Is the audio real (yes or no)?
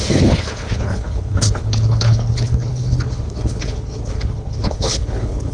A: no